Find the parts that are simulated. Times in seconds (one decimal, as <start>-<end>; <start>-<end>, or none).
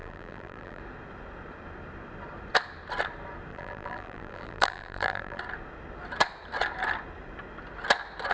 0.0-0.8; 3.5-5.4